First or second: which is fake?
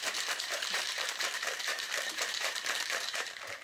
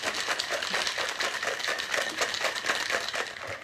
first